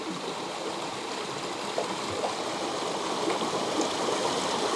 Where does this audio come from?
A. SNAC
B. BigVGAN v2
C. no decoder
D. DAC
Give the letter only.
C